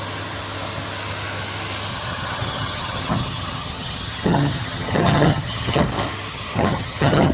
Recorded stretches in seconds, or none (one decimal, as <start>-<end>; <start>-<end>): 0.0-1.9; 5.8-6.3

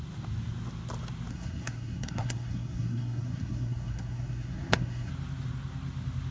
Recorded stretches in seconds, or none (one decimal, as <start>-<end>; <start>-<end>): 0.0-1.3; 5.1-6.3